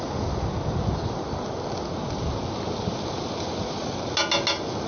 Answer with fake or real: real